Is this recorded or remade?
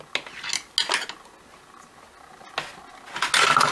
recorded